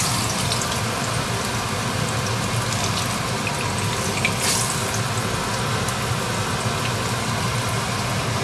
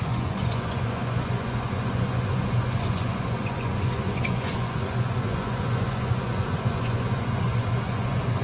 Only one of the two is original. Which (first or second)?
first